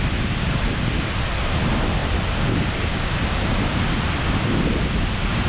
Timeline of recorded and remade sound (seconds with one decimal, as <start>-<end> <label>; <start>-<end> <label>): 0.0-5.5 recorded